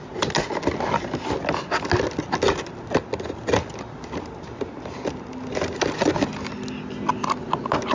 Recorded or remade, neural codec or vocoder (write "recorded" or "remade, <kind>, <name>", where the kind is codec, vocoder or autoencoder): recorded